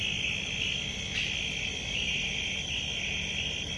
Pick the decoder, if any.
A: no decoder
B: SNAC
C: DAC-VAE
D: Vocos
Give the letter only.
A